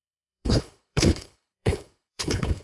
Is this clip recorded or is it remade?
remade